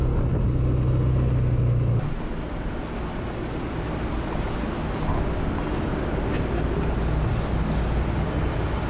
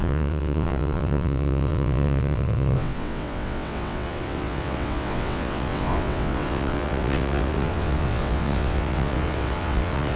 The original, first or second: first